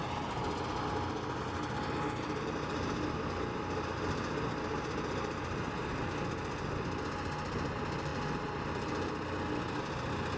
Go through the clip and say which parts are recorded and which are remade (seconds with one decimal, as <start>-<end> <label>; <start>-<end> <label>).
0.0-10.4 recorded